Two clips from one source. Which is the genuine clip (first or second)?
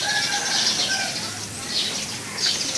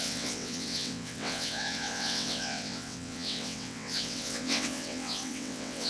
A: first